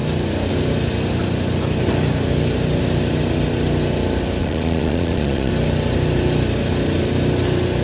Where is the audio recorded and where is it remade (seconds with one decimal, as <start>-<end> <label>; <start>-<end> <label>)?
0.0-4.4 recorded; 4.4-5.5 remade; 5.5-7.8 recorded

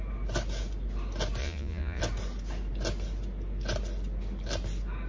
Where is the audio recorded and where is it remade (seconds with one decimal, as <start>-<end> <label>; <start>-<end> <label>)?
0.0-1.4 recorded; 1.4-2.0 remade; 2.0-5.1 recorded

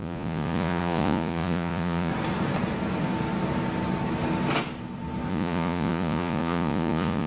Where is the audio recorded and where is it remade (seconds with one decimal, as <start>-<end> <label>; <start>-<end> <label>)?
0.0-2.1 remade; 2.1-5.3 recorded; 5.3-7.3 remade

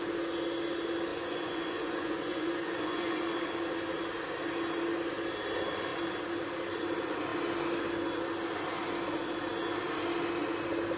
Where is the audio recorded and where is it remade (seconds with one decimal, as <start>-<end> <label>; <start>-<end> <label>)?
0.0-1.1 recorded; 1.1-3.2 remade; 3.2-11.0 recorded